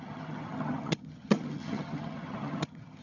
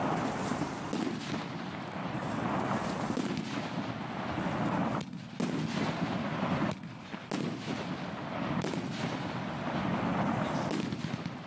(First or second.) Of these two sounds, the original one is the second